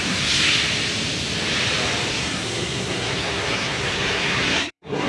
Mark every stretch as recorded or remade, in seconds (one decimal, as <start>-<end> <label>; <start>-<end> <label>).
0.0-0.5 remade; 0.5-2.1 recorded; 2.1-5.1 remade